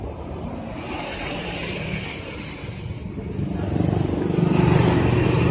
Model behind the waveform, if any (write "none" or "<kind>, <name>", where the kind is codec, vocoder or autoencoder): none